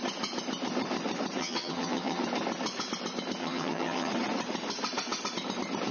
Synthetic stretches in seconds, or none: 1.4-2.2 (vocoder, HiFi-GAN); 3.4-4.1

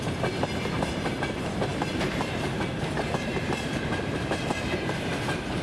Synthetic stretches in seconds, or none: 0.0-5.6 (vocoder, BigVGAN v2)